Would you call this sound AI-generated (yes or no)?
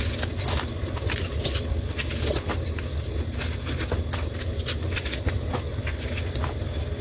no